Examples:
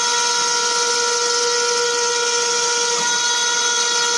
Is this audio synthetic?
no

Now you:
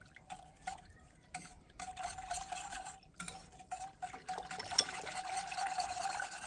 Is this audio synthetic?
no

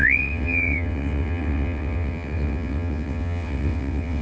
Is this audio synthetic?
yes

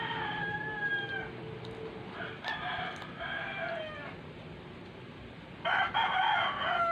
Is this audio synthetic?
no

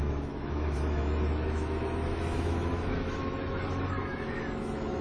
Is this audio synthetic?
yes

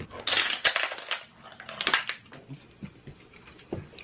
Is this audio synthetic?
no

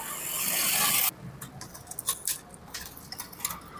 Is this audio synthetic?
no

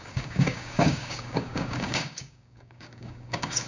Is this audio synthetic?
yes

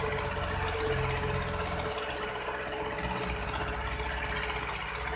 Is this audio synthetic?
no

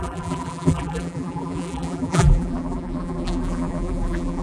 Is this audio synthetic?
yes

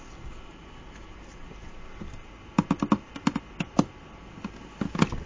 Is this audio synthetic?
no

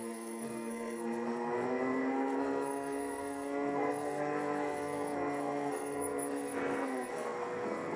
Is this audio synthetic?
yes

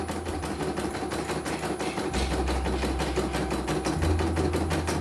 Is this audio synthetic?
no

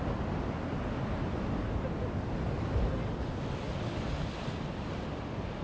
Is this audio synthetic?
no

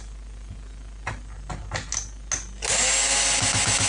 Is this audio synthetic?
no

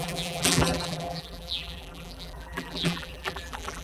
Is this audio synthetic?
yes